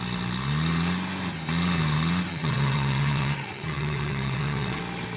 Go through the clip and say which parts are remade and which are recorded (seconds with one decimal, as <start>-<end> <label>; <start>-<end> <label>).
0.0-2.3 recorded; 2.3-4.8 remade; 4.8-5.2 recorded